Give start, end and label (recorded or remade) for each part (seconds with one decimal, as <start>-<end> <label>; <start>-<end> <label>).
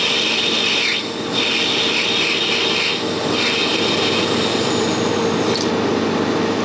0.0-5.2 remade; 5.2-6.6 recorded